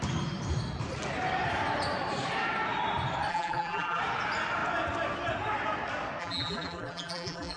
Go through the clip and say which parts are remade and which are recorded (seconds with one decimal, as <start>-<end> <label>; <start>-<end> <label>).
0.0-3.3 recorded; 3.3-4.0 remade; 4.0-6.2 recorded; 6.2-7.6 remade